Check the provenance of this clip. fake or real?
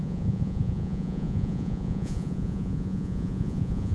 fake